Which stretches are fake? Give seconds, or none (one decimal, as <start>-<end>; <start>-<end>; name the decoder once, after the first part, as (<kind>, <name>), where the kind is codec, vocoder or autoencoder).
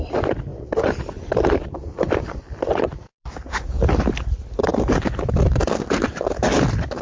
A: 0.5-2.4 (vocoder, BigVGAN v2); 3.1-3.6; 4.7-6.1